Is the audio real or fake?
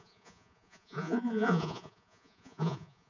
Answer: fake